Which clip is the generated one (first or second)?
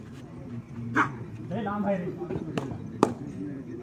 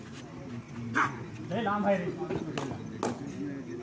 first